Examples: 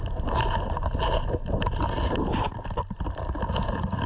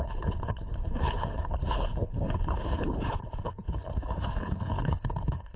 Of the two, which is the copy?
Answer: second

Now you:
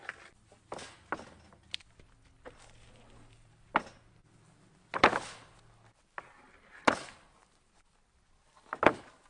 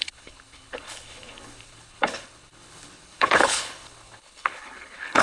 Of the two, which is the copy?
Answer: second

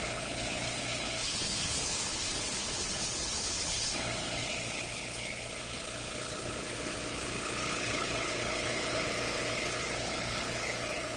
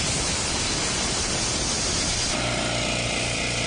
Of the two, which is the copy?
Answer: first